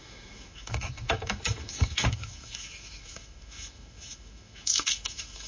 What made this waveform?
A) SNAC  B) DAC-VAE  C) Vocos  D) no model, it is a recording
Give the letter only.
B